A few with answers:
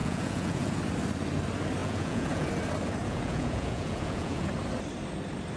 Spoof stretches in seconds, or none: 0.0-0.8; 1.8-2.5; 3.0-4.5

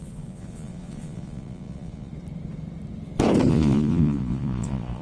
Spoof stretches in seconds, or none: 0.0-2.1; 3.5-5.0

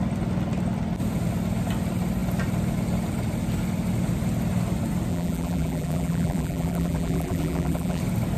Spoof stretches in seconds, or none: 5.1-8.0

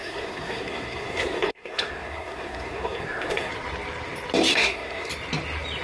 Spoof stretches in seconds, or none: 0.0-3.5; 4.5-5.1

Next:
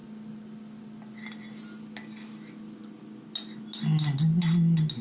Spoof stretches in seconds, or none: none